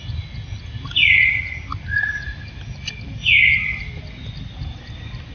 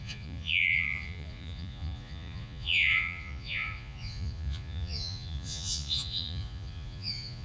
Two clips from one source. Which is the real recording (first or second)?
first